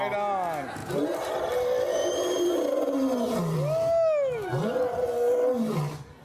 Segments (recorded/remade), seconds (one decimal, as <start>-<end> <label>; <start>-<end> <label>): 0.0-6.2 recorded